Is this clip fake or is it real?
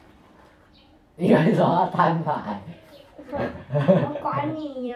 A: fake